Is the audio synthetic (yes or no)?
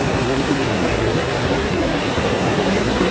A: yes